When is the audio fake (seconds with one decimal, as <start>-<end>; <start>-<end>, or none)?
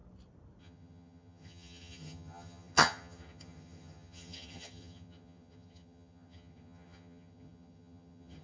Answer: 0.6-8.4